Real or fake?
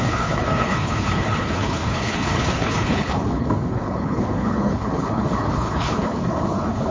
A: fake